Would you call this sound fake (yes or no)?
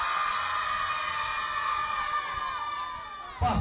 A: no